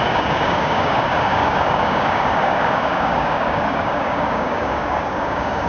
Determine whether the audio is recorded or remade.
remade